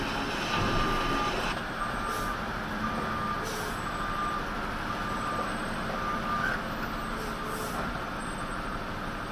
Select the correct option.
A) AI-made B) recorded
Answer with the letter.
B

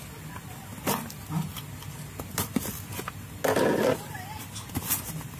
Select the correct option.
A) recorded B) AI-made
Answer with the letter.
A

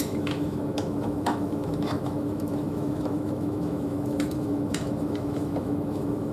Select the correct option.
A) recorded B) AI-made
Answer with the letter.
B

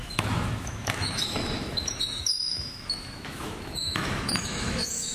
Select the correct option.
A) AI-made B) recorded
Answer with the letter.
A